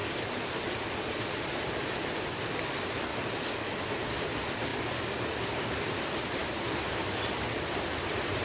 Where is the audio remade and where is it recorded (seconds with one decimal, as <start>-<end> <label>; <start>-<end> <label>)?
0.0-0.7 recorded; 0.7-3.1 remade; 3.1-3.7 recorded; 3.7-4.7 remade; 4.7-5.4 recorded; 5.4-6.4 remade; 6.4-7.7 recorded; 7.7-8.4 remade